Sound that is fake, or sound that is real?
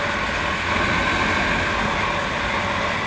real